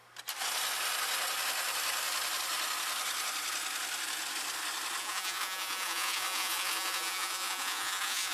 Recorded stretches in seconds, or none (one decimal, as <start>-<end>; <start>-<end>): 0.0-5.0